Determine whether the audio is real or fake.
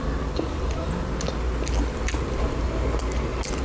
real